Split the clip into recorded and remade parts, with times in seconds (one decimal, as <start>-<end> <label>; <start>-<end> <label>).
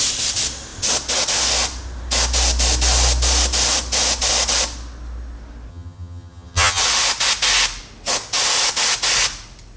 0.0-5.7 recorded; 5.7-6.8 remade; 6.8-9.8 recorded